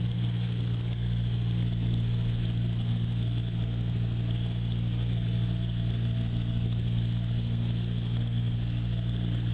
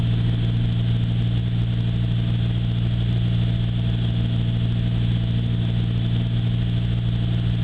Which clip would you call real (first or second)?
second